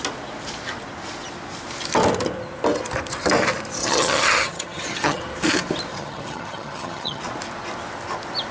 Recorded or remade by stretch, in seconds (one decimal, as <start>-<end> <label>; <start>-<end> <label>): 0.0-3.8 recorded; 3.8-5.2 remade; 5.2-5.9 recorded; 5.9-7.2 remade; 7.2-8.5 recorded